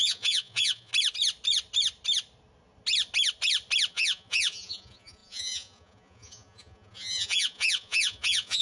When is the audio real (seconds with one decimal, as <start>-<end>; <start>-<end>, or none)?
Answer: 0.9-3.9